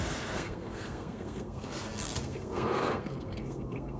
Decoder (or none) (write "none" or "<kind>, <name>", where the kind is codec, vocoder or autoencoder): codec, SNAC